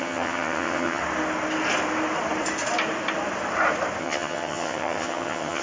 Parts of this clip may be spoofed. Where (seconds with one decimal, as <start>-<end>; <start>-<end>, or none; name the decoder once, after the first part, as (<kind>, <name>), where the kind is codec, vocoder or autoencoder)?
0.0-1.0 (vocoder, HiFi-GAN); 4.0-5.6